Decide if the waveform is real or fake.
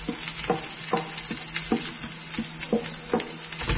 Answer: real